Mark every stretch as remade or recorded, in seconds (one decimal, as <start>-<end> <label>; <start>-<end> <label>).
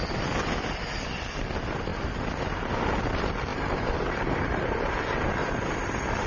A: 0.0-3.5 recorded; 3.5-4.5 remade; 4.5-5.4 recorded; 5.4-6.3 remade